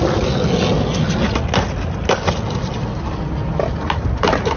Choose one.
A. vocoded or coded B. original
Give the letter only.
B